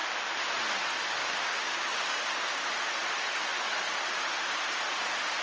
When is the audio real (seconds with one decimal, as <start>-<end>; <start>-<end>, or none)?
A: 0.0-1.2; 2.7-5.4